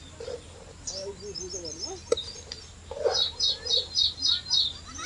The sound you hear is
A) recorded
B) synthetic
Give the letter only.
A